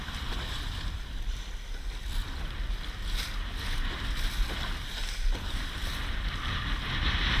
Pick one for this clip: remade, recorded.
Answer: recorded